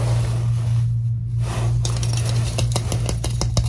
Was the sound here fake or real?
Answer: real